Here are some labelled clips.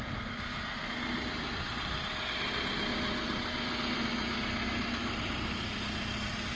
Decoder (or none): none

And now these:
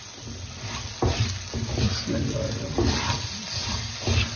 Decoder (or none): none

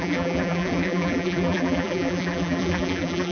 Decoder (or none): vocoder, BigVGAN v2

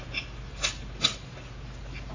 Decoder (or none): none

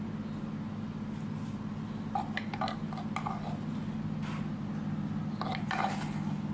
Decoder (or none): none